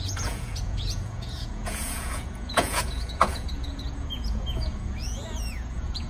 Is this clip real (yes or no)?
no